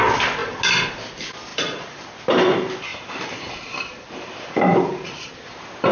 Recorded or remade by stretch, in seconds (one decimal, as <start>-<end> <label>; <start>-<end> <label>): 0.0-1.5 recorded; 1.5-2.1 remade; 2.1-2.9 recorded; 2.9-5.3 remade; 5.3-5.9 recorded